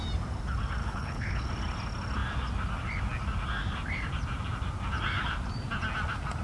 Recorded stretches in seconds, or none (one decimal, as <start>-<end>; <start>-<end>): 0.0-0.8; 1.5-6.4